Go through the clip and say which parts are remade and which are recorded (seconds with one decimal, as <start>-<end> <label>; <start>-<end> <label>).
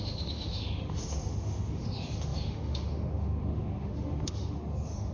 0.0-5.1 remade